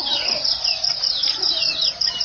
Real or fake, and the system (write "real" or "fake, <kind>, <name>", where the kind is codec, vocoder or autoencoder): real